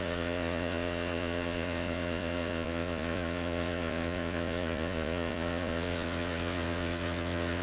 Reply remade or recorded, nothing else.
remade